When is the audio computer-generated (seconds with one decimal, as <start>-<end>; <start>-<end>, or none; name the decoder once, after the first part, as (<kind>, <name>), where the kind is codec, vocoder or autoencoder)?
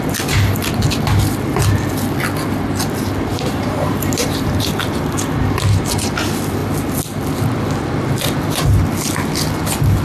3.3-4.6 (vocoder, BigVGAN v2)